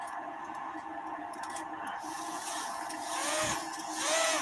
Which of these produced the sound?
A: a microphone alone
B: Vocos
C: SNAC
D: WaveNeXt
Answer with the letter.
B